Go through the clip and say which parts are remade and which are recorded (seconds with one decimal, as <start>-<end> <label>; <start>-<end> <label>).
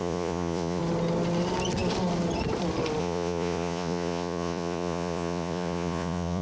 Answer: 0.0-0.8 remade; 0.8-3.0 recorded; 3.0-6.4 remade